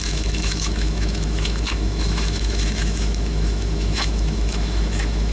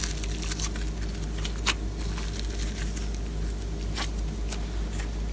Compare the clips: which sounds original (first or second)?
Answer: second